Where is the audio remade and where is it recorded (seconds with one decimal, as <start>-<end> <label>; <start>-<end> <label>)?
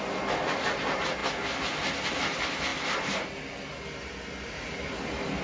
0.0-5.4 recorded